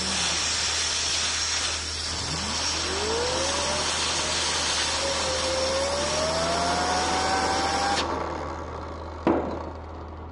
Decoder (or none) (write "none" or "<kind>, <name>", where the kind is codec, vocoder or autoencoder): none